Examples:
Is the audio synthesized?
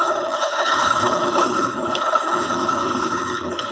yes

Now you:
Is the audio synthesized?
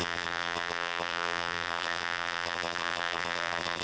yes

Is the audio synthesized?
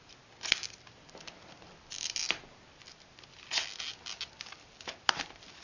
no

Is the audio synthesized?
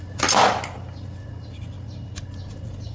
no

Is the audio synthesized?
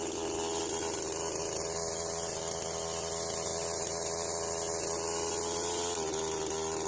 no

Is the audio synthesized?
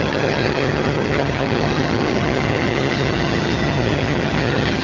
yes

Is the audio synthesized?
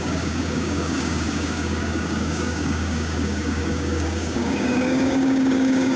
yes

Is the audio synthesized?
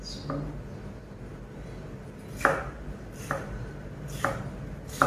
no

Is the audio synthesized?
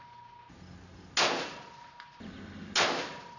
no